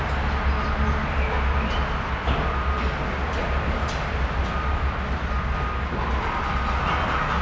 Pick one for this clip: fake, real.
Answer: real